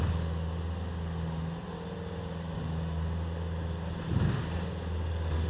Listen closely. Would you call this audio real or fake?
real